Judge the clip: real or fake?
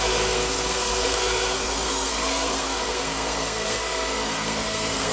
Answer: fake